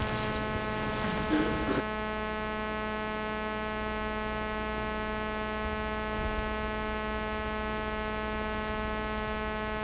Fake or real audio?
real